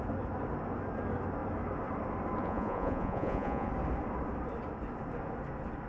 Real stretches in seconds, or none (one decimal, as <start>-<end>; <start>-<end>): 0.0-2.4; 3.7-5.9